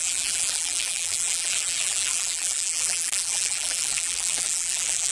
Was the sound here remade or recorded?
remade